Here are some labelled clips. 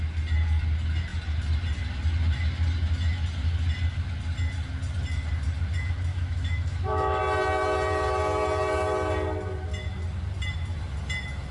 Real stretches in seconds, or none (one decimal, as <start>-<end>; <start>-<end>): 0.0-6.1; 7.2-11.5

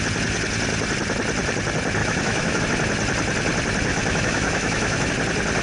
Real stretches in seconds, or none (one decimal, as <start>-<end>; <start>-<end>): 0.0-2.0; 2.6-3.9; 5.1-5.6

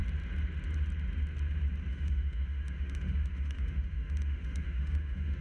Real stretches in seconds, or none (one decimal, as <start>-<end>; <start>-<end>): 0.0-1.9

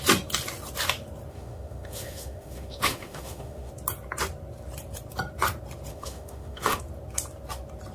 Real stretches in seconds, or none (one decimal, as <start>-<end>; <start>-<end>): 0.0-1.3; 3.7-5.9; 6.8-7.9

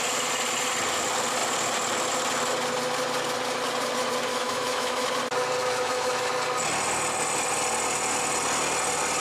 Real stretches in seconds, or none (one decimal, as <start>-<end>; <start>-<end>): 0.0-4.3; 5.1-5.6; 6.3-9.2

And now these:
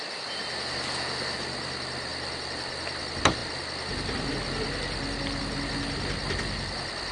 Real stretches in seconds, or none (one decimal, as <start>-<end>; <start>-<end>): 0.0-7.1

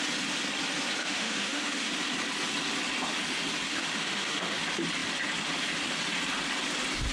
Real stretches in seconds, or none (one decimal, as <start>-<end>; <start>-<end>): 0.0-1.0; 1.9-3.7; 4.6-7.1

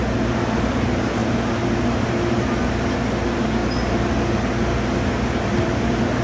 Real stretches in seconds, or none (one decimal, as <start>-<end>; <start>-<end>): 0.0-6.2